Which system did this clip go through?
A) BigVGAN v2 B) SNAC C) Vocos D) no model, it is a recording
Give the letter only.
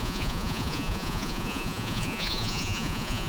C